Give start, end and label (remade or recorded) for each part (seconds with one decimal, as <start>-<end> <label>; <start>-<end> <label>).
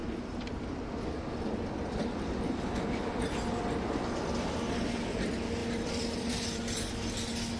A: 0.0-3.5 remade; 3.5-5.6 recorded; 5.6-6.9 remade; 6.9-7.6 recorded